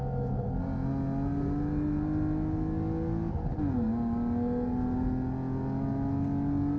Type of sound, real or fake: real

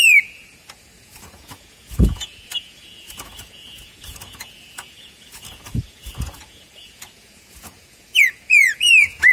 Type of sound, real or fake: fake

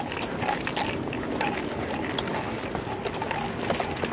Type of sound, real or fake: real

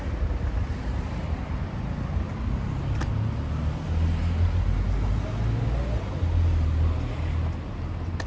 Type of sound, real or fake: real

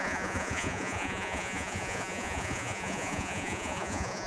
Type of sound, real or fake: fake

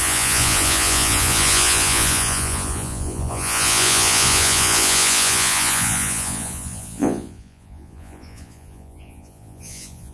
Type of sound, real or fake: fake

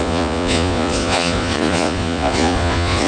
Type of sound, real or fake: fake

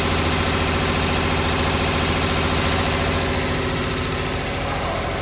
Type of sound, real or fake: real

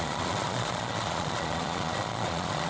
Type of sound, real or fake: fake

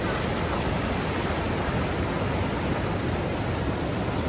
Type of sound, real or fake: real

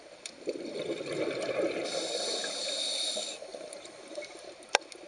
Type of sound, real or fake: real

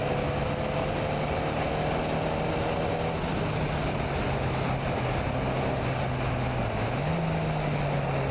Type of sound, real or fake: real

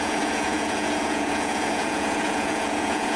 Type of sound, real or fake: fake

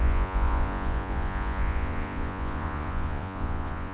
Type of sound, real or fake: fake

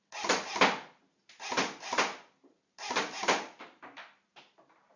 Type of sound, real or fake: real